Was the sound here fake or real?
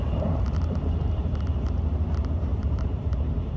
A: fake